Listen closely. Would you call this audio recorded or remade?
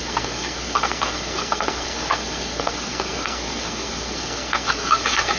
remade